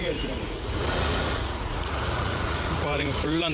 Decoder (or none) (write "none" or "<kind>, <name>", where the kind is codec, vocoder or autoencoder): vocoder, Vocos